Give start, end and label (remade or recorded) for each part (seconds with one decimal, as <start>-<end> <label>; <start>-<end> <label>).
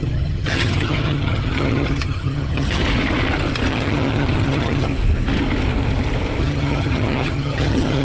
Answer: 0.0-2.8 remade; 2.8-3.7 recorded; 3.7-4.9 remade; 4.9-6.4 recorded; 6.4-8.0 remade